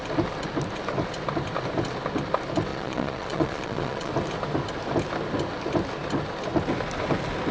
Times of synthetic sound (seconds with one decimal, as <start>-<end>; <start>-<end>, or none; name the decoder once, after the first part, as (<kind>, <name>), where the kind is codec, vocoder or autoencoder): 2.7-4.1 (vocoder, Vocos)